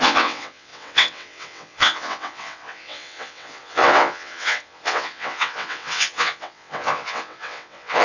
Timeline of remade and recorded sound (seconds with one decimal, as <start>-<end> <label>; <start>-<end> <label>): 0.0-8.0 remade